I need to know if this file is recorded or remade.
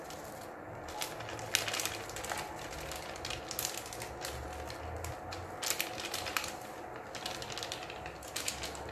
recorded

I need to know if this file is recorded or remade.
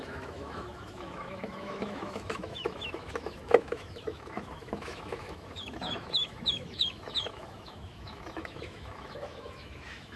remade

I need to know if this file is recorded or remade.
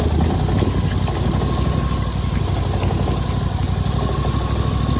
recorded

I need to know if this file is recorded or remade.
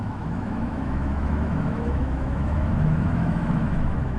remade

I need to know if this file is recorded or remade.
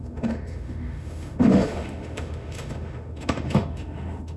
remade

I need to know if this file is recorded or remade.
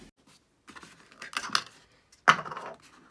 recorded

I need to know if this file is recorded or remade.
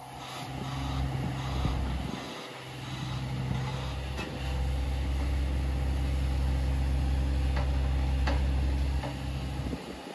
recorded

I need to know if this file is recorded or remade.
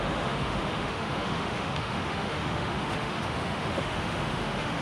remade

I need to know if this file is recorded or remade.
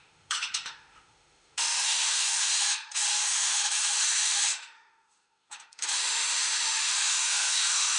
remade